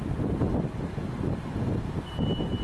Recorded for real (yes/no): yes